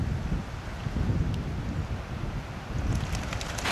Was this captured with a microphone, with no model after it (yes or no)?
yes